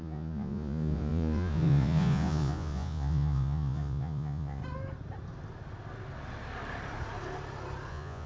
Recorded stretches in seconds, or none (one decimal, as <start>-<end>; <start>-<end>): 4.6-7.9